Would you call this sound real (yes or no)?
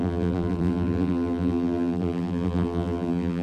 no